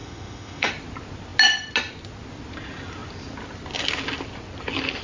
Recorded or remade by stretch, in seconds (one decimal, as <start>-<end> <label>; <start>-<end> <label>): 0.0-0.7 remade; 0.7-5.0 recorded